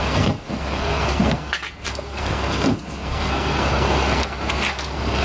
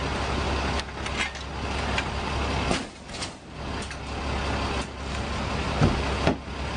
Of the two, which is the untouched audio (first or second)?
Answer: second